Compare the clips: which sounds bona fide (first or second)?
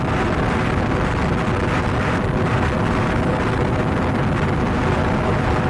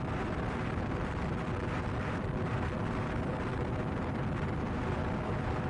first